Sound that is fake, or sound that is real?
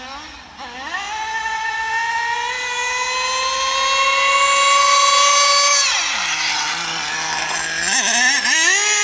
real